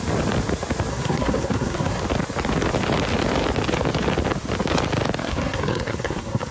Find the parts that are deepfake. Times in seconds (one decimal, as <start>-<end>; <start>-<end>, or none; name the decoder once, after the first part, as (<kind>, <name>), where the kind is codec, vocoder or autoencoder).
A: 0.9-2.0 (codec, SNAC); 5.2-6.5